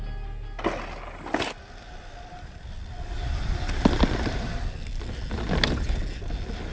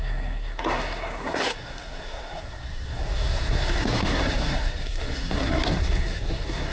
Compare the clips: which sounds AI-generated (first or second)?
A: second